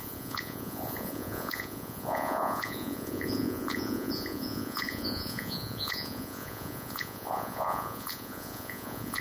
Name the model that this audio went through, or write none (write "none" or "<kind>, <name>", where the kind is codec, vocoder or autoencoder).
vocoder, Vocos